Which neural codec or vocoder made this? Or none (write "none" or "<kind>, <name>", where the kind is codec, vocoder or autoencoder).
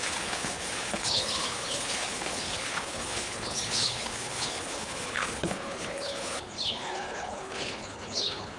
codec, HILCodec